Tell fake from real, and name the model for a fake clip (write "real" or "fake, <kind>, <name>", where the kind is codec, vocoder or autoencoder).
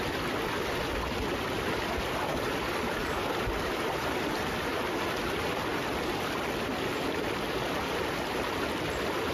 real